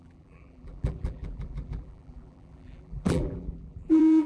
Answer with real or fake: fake